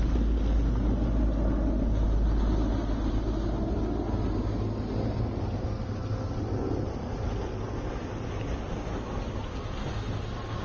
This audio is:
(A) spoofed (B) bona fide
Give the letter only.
B